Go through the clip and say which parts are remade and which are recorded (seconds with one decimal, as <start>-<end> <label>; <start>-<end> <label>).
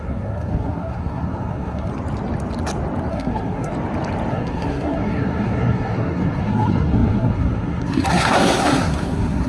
0.0-1.9 remade; 1.9-3.1 recorded; 3.1-3.7 remade; 3.7-4.3 recorded; 4.3-9.5 remade